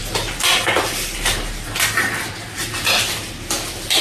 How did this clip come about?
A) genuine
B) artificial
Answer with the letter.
A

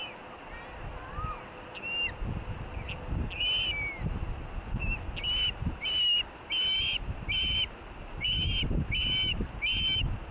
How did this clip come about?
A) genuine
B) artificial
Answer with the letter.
A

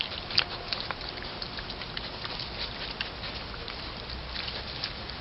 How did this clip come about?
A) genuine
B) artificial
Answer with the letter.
A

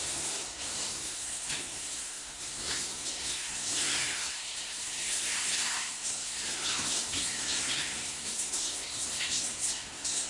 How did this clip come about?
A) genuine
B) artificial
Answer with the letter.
B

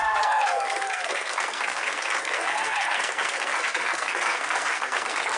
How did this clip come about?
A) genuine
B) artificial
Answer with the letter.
B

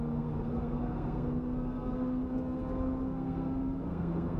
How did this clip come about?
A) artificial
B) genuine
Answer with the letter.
A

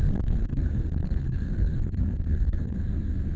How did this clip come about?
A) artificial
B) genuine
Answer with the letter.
A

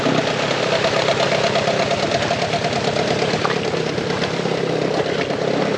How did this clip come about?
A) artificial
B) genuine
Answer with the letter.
B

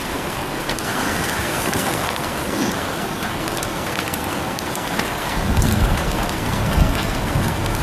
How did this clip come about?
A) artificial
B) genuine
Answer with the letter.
A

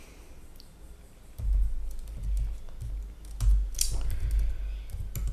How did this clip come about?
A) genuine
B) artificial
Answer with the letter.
A